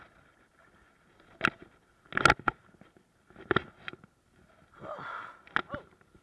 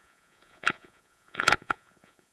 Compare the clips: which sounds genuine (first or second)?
first